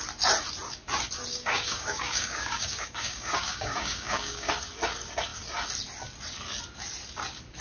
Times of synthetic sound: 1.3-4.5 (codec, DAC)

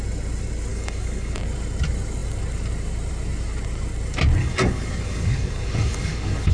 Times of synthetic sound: 0.7-1.4 (codec, DAC); 4.4-6.5